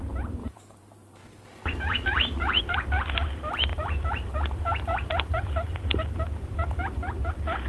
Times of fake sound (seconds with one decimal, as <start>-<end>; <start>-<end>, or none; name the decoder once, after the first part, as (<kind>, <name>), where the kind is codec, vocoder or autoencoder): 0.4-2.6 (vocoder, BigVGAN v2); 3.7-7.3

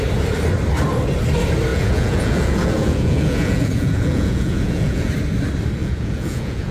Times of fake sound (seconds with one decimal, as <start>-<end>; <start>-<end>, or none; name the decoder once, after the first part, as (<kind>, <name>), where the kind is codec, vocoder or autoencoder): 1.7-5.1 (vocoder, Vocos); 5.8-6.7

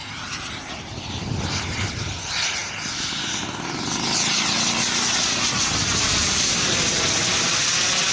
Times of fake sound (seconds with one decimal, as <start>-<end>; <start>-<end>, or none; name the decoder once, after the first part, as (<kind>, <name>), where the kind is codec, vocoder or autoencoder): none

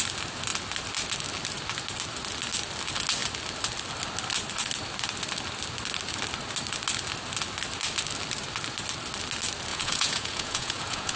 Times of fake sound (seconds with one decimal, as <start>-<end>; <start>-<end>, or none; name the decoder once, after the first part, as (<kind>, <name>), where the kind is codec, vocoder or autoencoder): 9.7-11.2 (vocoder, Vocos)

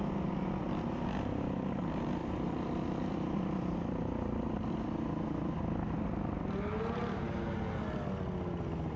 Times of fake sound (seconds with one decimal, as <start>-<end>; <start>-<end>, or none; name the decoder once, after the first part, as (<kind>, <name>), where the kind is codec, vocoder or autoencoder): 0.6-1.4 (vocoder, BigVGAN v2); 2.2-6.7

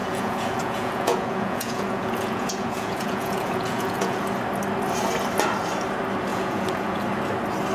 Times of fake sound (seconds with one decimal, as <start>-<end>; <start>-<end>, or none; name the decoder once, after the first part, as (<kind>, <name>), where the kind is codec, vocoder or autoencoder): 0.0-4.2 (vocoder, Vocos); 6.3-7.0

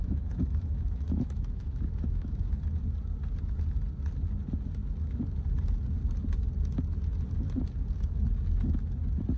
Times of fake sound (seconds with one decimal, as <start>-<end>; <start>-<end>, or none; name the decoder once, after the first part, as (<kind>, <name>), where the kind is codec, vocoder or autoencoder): 0.0-2.5 (autoencoder, DAC-VAE)

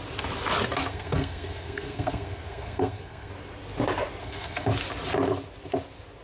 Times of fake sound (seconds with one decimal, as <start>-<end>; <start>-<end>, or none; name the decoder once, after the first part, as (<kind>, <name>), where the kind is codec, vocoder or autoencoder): 0.9-3.3 (codec, SNAC); 4.2-4.7